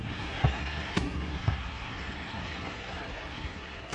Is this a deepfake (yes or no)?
yes